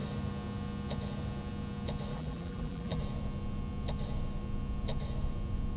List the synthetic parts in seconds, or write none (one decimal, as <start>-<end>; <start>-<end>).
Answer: 2.1-3.0